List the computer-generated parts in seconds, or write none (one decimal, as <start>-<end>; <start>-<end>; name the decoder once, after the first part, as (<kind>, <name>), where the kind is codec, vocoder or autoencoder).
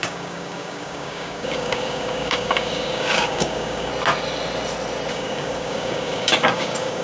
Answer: 0.0-3.9 (codec, DAC); 5.1-7.0